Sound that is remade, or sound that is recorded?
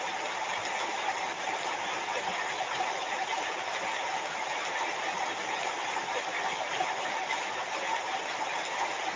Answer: recorded